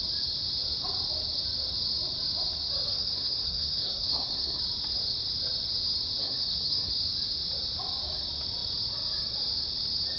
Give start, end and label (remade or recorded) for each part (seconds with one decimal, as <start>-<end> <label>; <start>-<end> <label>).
0.0-2.9 recorded; 2.9-4.6 remade; 4.6-6.2 recorded; 6.2-6.9 remade; 6.9-10.2 recorded